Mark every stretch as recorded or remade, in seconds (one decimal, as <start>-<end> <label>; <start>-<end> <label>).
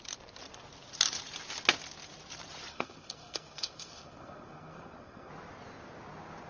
0.0-2.7 recorded; 2.7-5.3 remade; 5.3-6.5 recorded